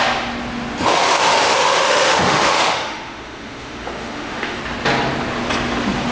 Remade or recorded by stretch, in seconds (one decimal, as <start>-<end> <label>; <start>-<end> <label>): 0.0-0.9 recorded; 0.9-4.6 remade; 4.6-6.1 recorded